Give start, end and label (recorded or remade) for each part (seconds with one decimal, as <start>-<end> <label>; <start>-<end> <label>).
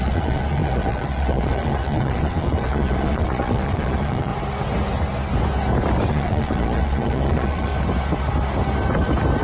0.0-4.3 remade; 4.3-6.1 recorded; 6.1-7.7 remade; 7.7-9.4 recorded